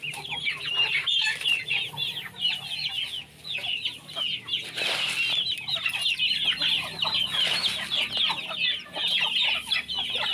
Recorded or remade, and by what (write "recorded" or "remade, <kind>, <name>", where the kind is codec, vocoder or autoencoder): recorded